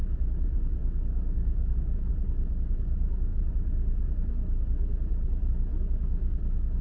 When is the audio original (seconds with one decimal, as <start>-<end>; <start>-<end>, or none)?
0.0-0.8; 2.1-6.8